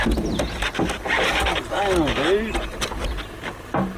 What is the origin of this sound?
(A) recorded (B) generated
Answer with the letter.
A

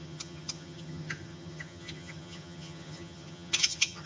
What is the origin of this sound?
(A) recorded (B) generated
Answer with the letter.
B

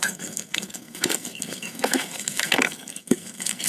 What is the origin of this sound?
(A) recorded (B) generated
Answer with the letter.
B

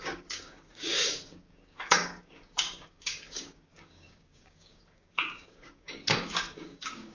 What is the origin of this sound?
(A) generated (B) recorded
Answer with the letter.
A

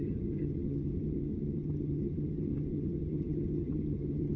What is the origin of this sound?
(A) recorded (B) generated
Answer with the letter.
B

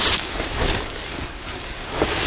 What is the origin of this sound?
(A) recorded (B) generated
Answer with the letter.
B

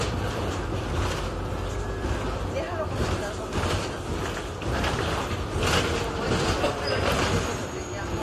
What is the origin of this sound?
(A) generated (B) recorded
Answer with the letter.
B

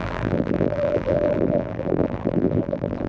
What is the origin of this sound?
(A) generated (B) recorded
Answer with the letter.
A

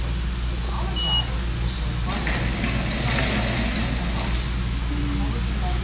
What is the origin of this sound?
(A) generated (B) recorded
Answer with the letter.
B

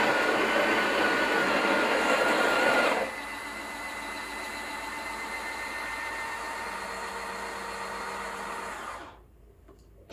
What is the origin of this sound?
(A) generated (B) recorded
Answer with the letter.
B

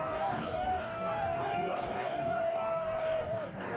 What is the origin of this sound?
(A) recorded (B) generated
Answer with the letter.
B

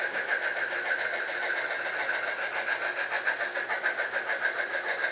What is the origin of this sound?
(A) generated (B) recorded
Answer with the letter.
B